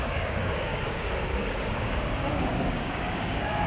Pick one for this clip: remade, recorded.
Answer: remade